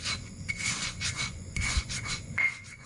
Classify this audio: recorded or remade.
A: remade